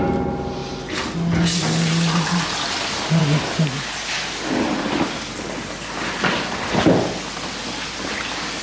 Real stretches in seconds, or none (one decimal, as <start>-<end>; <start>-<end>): 0.0-8.6